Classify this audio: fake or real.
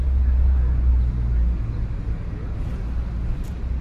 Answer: real